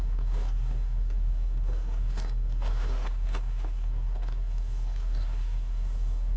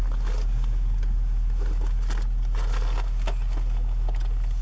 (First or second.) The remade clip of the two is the first